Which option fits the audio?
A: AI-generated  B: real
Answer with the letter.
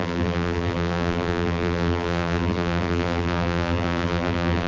A